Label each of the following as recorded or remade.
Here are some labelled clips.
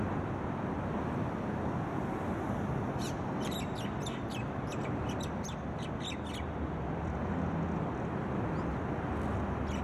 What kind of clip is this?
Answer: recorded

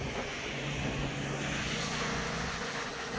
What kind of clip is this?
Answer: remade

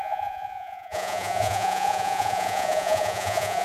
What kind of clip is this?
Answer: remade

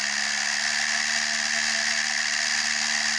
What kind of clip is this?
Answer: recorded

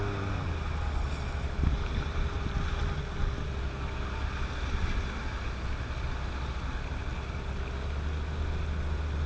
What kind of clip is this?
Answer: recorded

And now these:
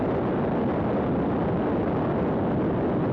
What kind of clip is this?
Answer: recorded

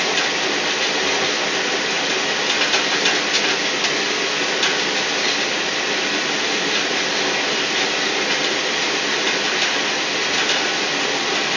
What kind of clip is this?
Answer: recorded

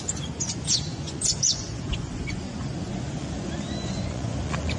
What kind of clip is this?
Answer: remade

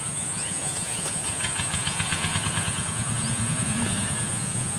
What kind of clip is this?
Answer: remade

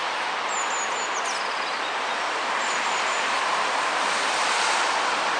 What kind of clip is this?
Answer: recorded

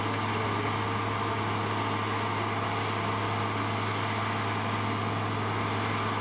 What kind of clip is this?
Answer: recorded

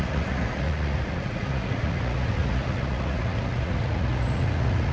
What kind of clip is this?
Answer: remade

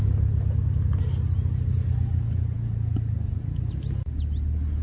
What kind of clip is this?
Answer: recorded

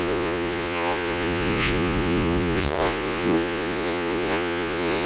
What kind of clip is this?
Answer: remade